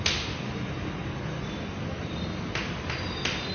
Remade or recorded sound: recorded